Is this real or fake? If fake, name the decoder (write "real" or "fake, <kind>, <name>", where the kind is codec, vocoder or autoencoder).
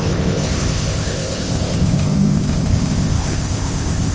fake, codec, ZipCodec